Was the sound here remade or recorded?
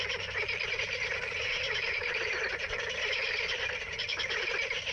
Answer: remade